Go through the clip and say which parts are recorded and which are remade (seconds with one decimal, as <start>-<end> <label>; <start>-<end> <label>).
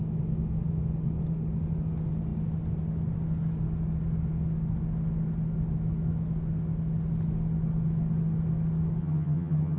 0.0-9.0 recorded; 9.0-9.8 remade